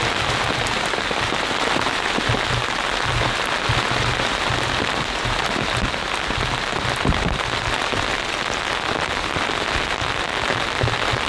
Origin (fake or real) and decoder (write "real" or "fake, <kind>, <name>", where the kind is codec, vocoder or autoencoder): real